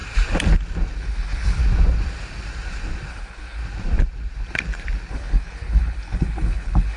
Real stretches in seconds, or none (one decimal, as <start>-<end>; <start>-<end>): 0.0-1.0; 1.6-3.1; 3.6-5.1